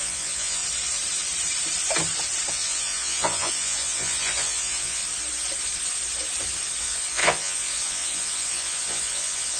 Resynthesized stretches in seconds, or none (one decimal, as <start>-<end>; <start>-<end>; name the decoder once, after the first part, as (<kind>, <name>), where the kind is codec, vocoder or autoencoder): 0.0-0.6 (vocoder, Vocos); 2.5-5.0; 6.8-9.6